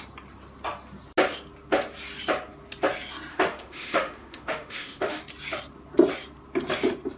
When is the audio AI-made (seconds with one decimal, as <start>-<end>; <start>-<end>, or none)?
3.3-5.2